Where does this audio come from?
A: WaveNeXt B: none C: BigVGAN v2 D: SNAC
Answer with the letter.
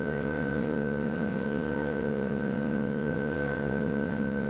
A